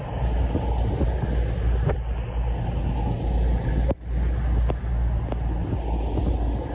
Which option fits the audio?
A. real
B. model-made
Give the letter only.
A